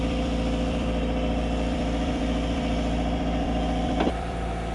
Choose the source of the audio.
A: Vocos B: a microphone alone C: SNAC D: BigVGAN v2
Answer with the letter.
D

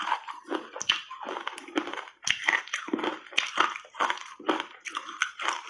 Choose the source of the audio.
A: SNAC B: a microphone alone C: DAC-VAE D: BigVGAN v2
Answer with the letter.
B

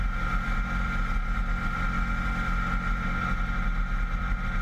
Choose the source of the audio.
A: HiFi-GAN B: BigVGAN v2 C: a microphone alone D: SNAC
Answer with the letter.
C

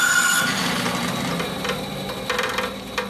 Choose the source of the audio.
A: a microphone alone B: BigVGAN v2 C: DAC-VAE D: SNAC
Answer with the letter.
A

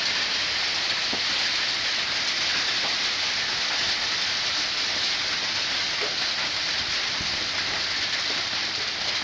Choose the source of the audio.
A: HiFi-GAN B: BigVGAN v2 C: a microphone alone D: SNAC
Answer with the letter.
C